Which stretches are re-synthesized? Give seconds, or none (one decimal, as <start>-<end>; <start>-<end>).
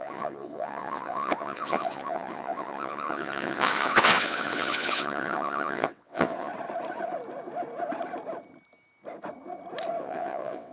0.0-6.5; 10.0-10.7